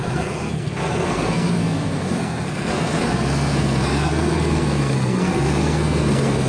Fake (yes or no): yes